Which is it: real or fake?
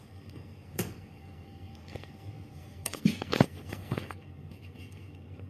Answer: fake